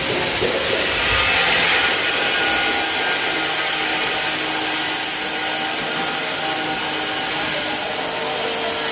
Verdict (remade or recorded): recorded